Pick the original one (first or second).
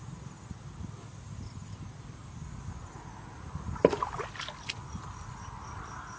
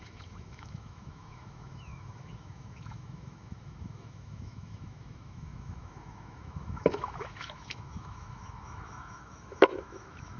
first